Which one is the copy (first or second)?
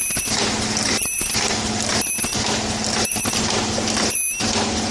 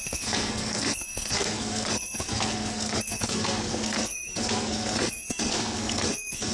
second